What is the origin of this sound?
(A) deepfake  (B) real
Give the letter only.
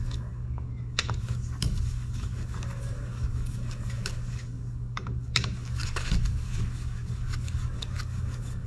A